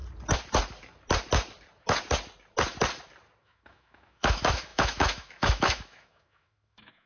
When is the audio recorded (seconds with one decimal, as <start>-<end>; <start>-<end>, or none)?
0.0-3.4